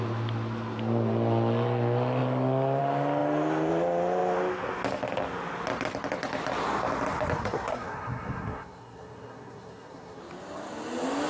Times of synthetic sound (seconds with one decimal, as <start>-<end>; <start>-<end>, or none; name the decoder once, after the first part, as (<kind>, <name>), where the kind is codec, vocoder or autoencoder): 7.4-10.2 (codec, SNAC)